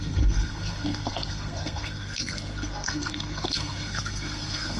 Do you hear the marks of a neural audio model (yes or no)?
yes